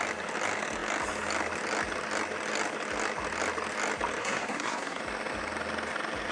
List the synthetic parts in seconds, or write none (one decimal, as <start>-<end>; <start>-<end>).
4.2-5.0